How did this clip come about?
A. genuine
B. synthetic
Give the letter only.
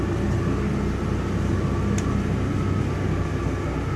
A